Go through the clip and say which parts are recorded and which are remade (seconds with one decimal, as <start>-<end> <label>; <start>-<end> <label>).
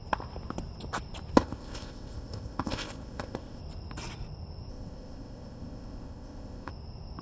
0.0-1.4 recorded; 1.4-3.6 remade; 3.6-4.7 recorded; 4.7-6.7 remade; 6.7-7.2 recorded